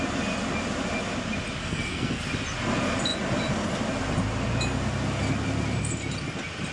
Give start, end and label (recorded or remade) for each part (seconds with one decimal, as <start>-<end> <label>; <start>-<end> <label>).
0.0-1.6 recorded; 1.6-2.2 remade; 2.2-6.7 recorded